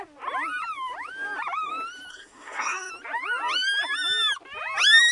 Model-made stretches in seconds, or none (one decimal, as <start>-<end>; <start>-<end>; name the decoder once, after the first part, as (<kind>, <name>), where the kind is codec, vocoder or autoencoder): 2.1-2.9 (codec, SNAC)